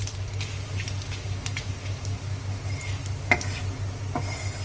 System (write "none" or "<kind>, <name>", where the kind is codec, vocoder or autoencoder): none